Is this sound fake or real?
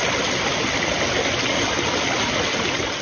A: real